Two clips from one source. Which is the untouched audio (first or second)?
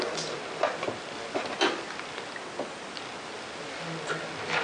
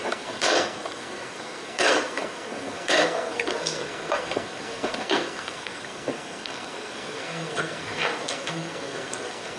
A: first